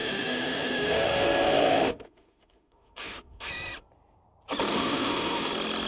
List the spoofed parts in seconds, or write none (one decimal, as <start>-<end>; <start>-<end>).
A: 0.0-3.5; 4.7-5.5